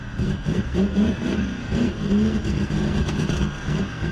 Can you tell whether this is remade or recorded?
remade